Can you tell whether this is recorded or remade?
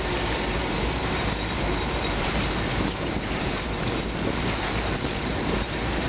remade